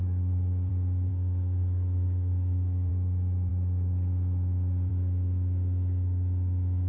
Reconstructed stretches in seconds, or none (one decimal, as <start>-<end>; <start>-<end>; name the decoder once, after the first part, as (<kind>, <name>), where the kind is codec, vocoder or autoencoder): 0.0-0.7 (codec, DAC); 1.1-2.9